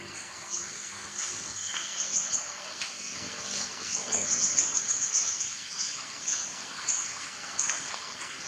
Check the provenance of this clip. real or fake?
fake